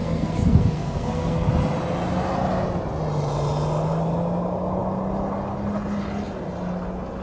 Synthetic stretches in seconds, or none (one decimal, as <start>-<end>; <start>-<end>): 0.0-1.5